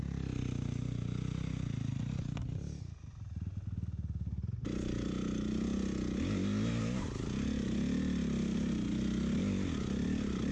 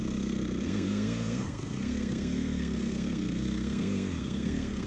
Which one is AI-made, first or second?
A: second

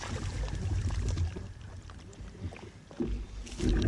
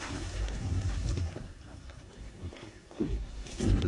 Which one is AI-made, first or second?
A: second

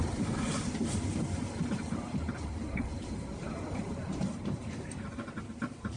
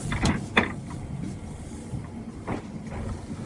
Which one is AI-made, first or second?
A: first